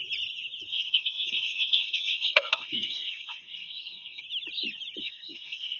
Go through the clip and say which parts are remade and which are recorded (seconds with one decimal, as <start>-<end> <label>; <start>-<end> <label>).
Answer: 0.0-0.7 recorded; 0.7-4.2 remade; 4.2-5.0 recorded; 5.0-5.8 remade